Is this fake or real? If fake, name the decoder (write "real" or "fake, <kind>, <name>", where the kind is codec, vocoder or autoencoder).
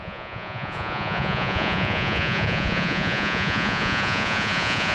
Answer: fake, vocoder, Vocos